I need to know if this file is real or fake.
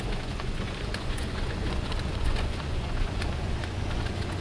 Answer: fake